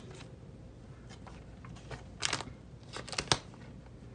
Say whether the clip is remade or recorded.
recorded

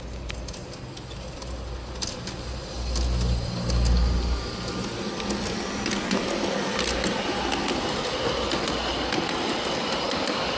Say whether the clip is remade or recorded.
recorded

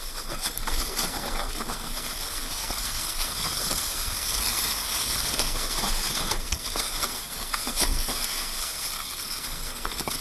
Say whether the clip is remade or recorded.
remade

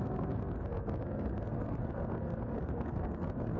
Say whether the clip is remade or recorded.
remade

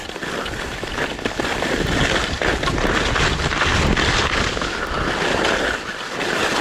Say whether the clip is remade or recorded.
recorded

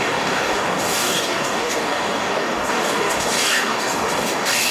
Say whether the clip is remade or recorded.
remade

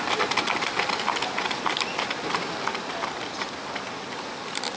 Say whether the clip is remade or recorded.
recorded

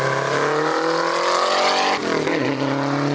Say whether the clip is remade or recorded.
recorded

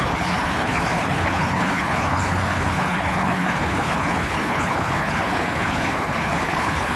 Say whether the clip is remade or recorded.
remade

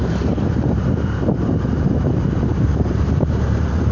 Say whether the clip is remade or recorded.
remade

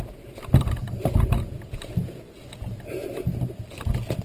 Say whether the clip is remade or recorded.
recorded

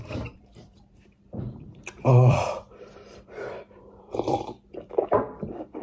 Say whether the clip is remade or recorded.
remade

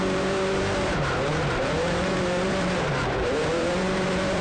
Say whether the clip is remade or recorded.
remade